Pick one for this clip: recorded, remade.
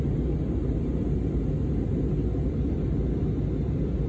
recorded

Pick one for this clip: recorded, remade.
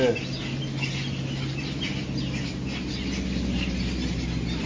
recorded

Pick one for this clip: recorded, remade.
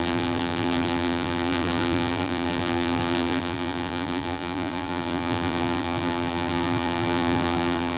remade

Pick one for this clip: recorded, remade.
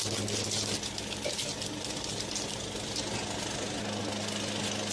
recorded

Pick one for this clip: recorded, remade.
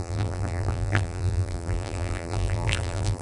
remade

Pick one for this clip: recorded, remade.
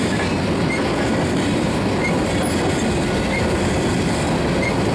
recorded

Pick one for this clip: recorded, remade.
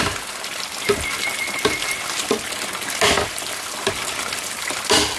recorded